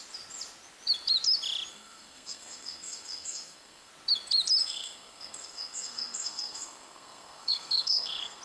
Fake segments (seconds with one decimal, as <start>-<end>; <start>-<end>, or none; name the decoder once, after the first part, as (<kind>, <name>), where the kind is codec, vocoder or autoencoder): 1.7-3.9 (codec, SNAC); 4.6-8.4